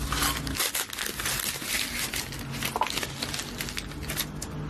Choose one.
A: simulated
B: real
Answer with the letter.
B